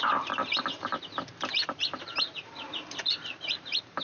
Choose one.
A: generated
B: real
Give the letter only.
A